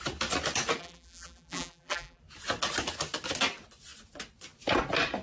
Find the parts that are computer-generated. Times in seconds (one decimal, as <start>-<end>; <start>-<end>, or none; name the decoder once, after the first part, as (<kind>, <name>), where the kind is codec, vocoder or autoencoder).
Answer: 0.8-2.2 (vocoder, BigVGAN v2)